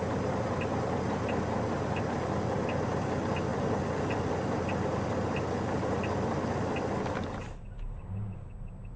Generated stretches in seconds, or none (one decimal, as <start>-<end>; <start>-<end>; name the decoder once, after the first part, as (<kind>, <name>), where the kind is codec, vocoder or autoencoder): none